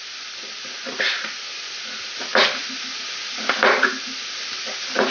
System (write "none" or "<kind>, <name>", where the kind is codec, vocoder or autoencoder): none